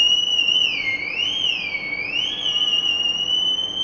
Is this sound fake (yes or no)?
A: no